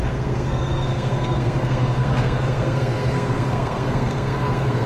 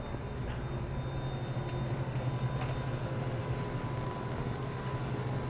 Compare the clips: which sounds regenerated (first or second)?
first